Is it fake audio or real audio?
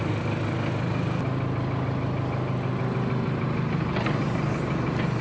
real